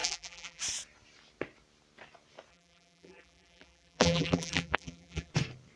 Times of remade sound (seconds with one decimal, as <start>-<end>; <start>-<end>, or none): 0.0-0.6; 2.5-5.3